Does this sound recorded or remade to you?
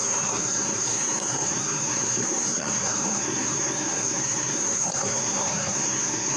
remade